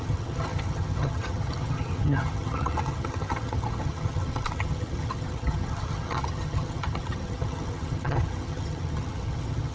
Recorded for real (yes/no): no